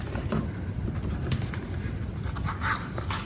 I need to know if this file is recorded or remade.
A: recorded